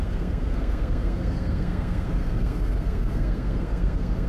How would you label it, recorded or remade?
remade